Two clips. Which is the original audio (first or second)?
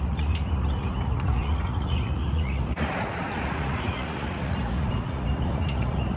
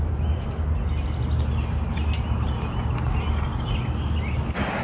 second